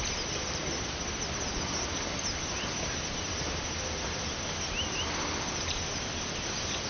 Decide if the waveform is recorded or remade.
recorded